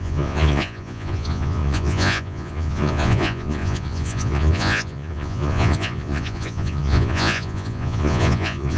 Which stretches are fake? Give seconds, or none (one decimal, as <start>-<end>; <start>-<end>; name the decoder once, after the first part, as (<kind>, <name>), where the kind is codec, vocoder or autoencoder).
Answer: 0.0-8.8 (vocoder, Vocos)